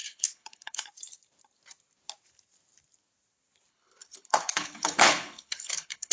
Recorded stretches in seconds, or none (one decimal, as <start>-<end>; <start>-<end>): 0.8-3.7